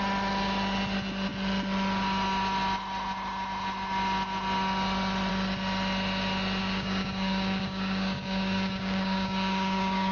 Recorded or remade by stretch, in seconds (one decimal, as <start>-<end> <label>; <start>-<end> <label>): 0.0-6.6 recorded; 6.6-10.1 remade